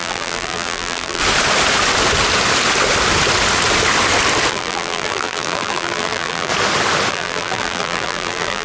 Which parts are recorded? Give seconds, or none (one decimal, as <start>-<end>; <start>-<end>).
1.2-4.5; 6.5-7.1

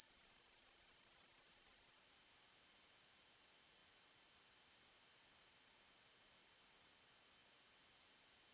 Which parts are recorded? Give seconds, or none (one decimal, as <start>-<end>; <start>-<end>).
2.0-8.5

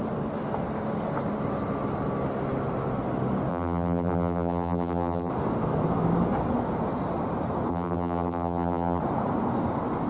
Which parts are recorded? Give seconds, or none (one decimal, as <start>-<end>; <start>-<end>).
0.0-3.5; 5.3-7.7; 9.0-10.1

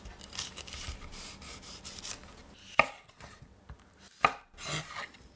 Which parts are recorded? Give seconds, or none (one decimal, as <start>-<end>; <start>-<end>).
0.0-5.4

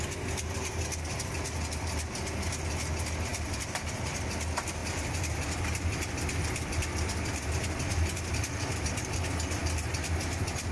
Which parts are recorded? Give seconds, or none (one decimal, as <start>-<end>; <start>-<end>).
0.0-3.3; 4.2-4.8; 5.6-10.7